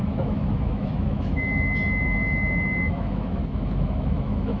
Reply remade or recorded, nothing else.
remade